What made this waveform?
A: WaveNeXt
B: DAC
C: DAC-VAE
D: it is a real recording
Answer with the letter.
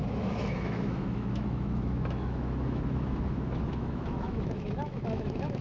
C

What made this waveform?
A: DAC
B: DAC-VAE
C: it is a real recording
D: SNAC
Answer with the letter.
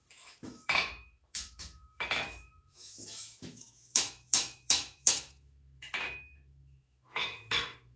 B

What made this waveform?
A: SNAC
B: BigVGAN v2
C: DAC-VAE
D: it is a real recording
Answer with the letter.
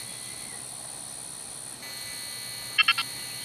D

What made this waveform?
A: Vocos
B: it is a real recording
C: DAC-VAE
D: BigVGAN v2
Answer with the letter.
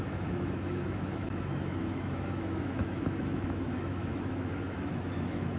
C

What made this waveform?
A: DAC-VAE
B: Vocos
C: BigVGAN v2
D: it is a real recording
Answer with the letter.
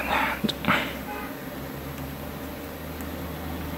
D